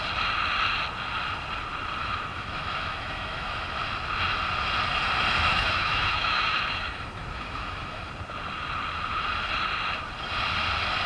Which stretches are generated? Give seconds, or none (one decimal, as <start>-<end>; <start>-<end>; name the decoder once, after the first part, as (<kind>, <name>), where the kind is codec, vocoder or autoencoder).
2.0-3.7 (autoencoder, DAC-VAE); 5.5-8.1